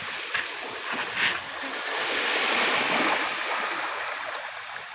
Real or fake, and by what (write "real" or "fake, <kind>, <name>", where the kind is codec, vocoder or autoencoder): real